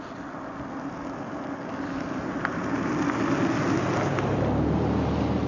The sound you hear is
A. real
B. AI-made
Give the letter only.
A